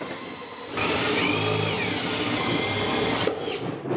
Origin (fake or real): real